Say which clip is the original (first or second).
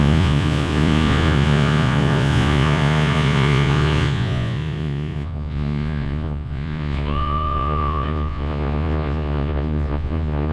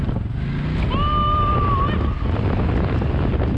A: second